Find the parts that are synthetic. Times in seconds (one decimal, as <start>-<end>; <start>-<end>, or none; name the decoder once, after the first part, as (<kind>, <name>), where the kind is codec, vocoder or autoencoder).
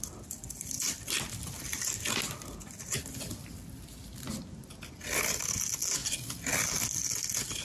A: none